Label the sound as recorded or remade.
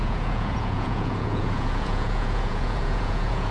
remade